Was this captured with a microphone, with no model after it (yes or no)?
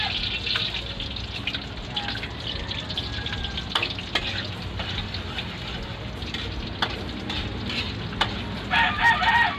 yes